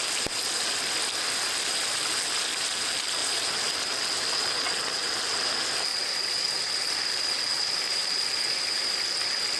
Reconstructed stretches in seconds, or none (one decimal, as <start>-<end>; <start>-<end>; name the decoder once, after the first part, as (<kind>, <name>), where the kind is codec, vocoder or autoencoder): 5.9-8.8 (vocoder, BigVGAN v2)